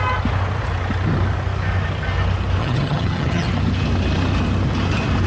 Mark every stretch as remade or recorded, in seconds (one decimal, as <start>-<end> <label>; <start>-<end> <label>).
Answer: 0.0-2.6 recorded; 2.6-3.5 remade; 3.5-5.3 recorded